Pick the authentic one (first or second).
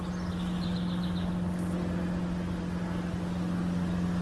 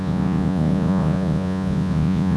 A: first